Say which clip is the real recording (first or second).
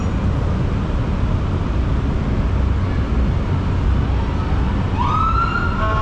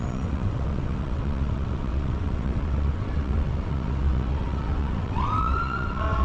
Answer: first